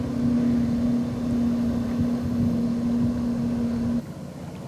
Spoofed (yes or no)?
no